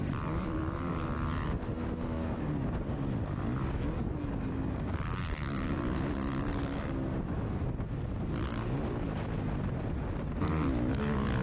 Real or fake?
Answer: real